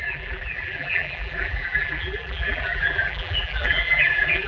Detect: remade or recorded remade